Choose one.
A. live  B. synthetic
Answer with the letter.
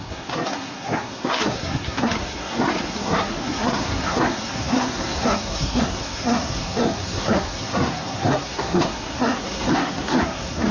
B